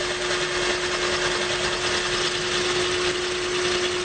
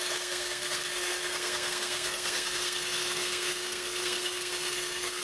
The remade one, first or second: second